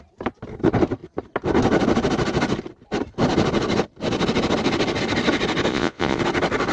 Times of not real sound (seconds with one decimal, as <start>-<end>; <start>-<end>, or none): 5.7-6.2